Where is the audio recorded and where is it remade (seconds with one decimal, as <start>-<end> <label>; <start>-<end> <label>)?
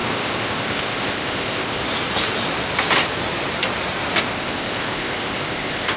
0.0-1.8 remade; 1.8-4.2 recorded; 4.2-6.0 remade